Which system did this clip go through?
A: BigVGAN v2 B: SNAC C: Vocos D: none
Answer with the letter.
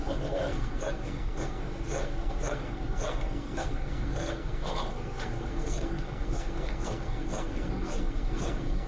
B